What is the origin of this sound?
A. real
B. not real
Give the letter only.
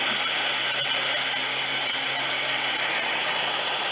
A